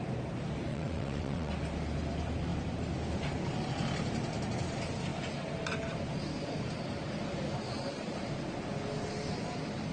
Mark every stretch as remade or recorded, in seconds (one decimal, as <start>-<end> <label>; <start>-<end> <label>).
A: 0.0-0.7 recorded; 0.7-1.5 remade; 1.5-9.9 recorded